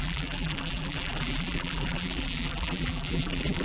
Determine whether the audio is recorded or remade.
remade